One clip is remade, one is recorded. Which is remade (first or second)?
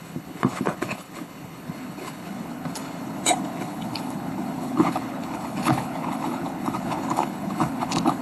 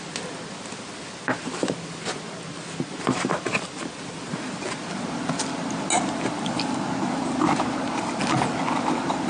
first